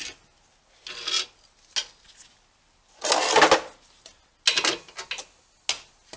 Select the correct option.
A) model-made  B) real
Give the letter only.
B